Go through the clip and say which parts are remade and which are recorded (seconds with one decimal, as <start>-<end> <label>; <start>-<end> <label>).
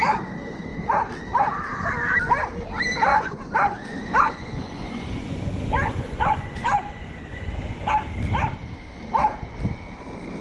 0.0-3.1 recorded; 3.1-7.9 remade; 7.9-10.4 recorded